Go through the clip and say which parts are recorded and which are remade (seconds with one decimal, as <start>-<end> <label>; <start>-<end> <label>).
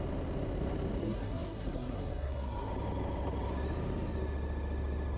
0.0-1.0 recorded; 1.0-2.7 remade; 2.7-5.2 recorded